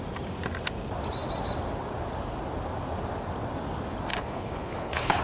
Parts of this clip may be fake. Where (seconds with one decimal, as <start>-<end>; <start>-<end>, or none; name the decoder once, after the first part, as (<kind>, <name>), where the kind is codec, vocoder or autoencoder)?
4.1-5.2 (codec, HILCodec)